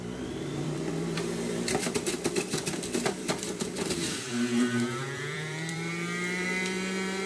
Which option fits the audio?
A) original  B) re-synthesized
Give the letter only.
B